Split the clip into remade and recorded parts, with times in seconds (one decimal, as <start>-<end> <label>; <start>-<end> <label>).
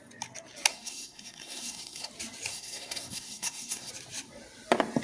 0.0-0.7 recorded; 0.7-2.1 remade; 2.1-2.5 recorded; 2.5-3.9 remade; 3.9-5.0 recorded